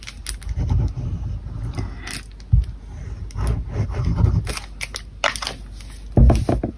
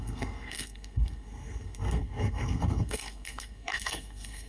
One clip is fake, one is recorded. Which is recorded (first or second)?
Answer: first